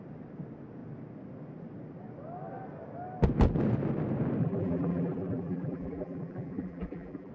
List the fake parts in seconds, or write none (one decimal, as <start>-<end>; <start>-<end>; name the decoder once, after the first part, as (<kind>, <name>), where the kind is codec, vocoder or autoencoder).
4.4-7.3 (vocoder, BigVGAN v2)